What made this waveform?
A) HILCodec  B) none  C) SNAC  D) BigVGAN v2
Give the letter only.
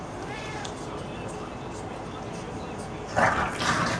B